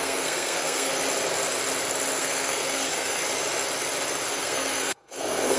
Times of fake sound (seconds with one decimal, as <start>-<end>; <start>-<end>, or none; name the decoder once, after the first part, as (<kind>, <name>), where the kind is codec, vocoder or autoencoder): 0.0-0.9 (codec, SNAC); 2.2-3.2; 4.3-5.6